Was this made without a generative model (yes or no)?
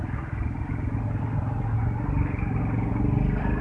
yes